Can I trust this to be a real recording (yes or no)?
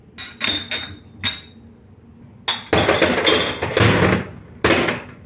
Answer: yes